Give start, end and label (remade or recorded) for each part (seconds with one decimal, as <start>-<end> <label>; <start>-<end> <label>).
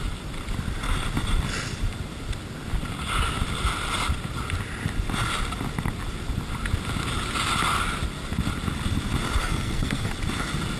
0.0-9.4 recorded; 9.4-10.1 remade; 10.1-10.8 recorded